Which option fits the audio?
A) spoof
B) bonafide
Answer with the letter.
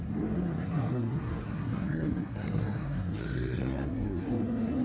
A